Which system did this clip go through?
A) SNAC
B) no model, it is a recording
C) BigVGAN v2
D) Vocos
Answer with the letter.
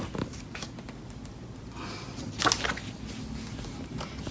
B